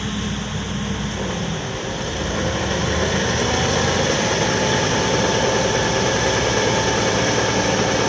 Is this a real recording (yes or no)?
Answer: yes